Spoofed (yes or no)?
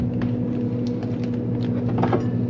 no